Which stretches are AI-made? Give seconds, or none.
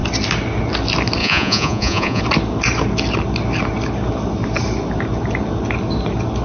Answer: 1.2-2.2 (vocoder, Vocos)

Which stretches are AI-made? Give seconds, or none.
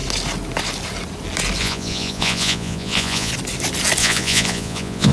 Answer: 1.6-3.3 (vocoder, Vocos); 4.0-5.1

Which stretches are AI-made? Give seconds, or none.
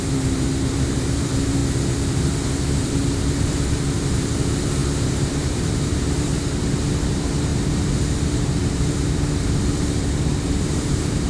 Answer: 0.0-1.6 (vocoder, BigVGAN v2); 2.1-11.3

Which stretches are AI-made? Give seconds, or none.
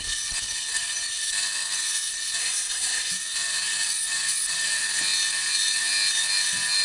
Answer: 2.4-3.1 (codec, SNAC)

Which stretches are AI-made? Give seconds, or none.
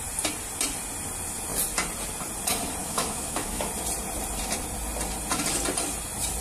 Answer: 2.8-3.7 (autoencoder, DAC-VAE)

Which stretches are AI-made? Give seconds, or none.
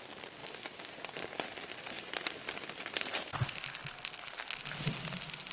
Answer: 3.1-3.6 (vocoder, BigVGAN v2)